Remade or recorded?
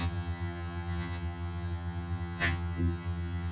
remade